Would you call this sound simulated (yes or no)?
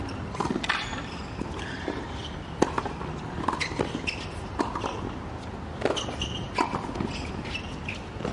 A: no